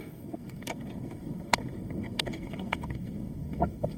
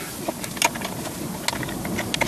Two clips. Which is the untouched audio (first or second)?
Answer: second